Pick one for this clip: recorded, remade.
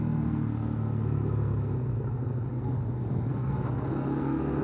remade